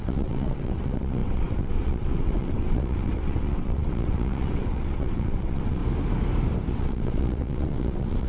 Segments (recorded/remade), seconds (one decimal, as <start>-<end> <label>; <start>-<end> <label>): 0.0-5.8 remade; 5.8-6.7 recorded; 6.7-8.3 remade